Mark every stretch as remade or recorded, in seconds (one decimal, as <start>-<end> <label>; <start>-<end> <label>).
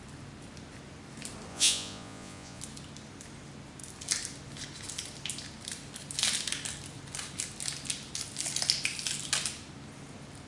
0.0-1.5 recorded; 1.5-2.6 remade; 2.6-10.5 recorded